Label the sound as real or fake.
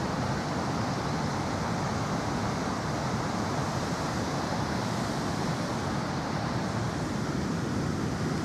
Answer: real